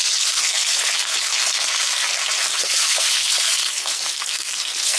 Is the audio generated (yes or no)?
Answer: yes